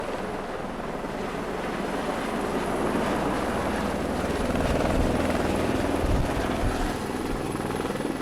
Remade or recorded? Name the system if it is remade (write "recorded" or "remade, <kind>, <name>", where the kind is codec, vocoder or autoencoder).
recorded